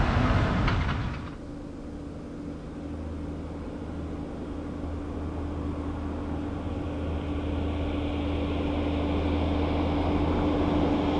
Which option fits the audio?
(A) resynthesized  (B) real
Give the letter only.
B